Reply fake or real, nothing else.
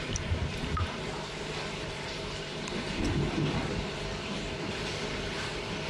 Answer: fake